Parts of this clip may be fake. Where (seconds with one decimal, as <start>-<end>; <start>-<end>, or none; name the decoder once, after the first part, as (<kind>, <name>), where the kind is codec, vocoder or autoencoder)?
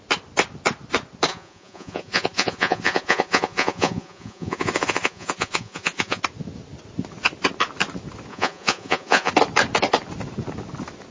1.3-6.2 (vocoder, Vocos); 8.3-9.3